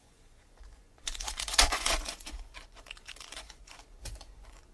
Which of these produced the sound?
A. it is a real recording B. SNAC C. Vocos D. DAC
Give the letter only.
C